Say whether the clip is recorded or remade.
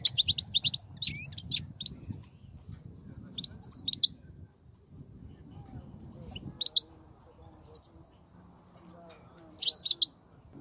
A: recorded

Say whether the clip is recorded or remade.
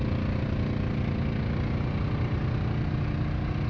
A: recorded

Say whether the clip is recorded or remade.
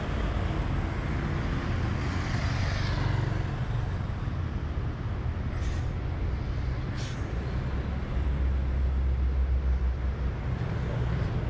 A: recorded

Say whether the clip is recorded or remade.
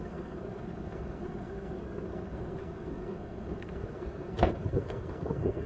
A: remade